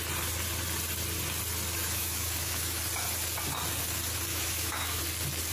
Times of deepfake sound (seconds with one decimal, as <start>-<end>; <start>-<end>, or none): 1.8-2.8; 4.3-5.0